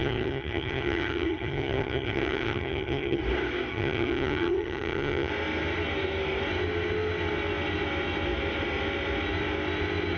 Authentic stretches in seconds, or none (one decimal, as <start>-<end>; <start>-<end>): 3.2-3.7; 5.3-10.2